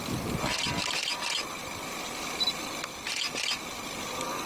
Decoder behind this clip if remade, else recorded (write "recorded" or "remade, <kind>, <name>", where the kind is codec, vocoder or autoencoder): recorded